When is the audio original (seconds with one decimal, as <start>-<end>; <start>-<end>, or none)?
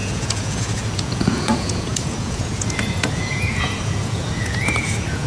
none